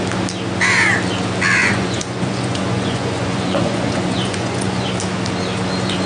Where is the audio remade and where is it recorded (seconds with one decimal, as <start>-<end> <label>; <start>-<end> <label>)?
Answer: 0.0-1.6 recorded; 1.6-4.9 remade; 4.9-6.1 recorded